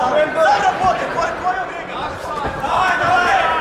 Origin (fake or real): real